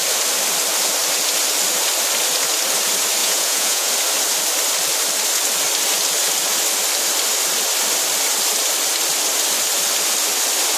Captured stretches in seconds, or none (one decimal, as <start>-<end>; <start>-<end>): 0.0-3.2; 3.9-10.8